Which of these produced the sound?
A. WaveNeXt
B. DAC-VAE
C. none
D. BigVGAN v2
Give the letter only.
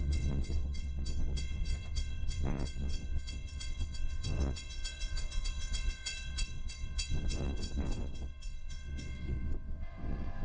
A